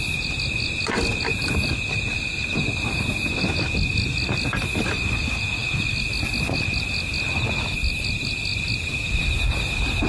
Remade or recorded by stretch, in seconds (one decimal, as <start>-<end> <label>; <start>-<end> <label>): 0.0-10.1 recorded

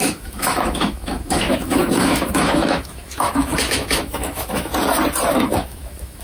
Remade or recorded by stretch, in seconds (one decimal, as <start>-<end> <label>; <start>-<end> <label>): 0.0-4.7 remade; 4.7-5.3 recorded; 5.3-6.2 remade

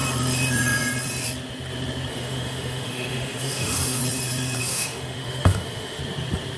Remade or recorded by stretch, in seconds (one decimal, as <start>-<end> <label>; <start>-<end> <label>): 0.0-2.1 recorded; 2.1-4.0 remade; 4.0-4.6 recorded; 4.6-6.0 remade; 6.0-6.6 recorded

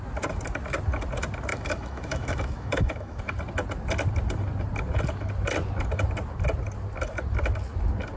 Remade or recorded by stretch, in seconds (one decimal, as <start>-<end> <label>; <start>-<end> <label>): 0.0-1.5 recorded; 1.5-3.2 remade; 3.2-8.2 recorded

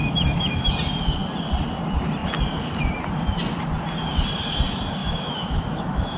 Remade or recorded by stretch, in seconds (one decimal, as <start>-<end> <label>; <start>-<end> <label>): 0.0-0.7 remade; 0.7-5.0 recorded; 5.0-6.2 remade

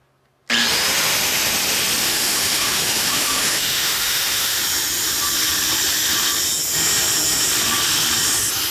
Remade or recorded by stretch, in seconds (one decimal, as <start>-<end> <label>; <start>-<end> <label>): 0.0-2.0 recorded; 2.0-4.6 remade; 4.6-8.7 recorded

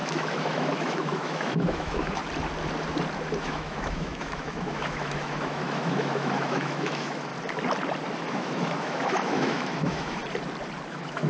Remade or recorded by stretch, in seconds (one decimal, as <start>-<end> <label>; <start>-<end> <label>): 0.0-2.2 remade; 2.2-3.4 recorded; 3.4-7.3 remade; 7.3-8.3 recorded; 8.3-10.2 remade; 10.2-10.9 recorded; 10.9-11.3 remade